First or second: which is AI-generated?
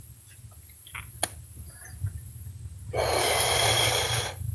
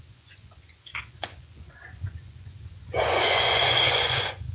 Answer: second